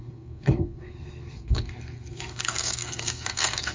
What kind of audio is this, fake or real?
fake